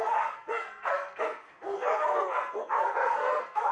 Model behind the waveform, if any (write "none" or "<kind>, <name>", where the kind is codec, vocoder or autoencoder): codec, SNAC